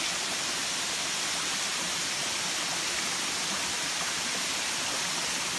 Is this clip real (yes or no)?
yes